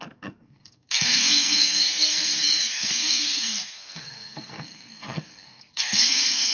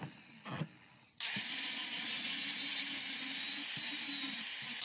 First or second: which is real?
second